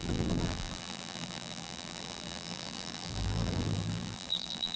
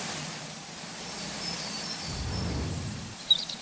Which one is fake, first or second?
first